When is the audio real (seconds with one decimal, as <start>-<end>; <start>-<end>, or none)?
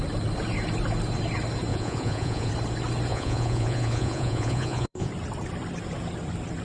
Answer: 0.0-1.7; 2.5-3.1; 5.1-6.6